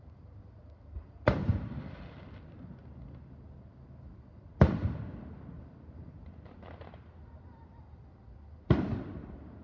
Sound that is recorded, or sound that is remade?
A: recorded